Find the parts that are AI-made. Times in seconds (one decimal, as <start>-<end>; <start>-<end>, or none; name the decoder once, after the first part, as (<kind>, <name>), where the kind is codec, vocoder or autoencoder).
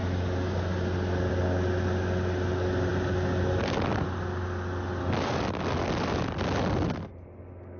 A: none